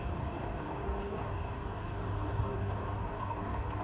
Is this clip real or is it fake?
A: fake